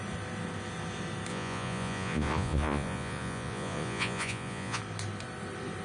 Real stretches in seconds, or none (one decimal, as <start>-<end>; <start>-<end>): 0.0-1.3; 4.8-5.8